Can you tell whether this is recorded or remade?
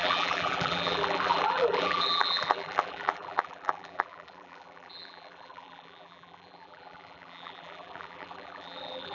remade